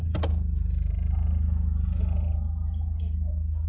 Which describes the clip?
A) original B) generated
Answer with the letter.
A